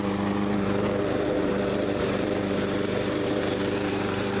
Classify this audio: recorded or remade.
remade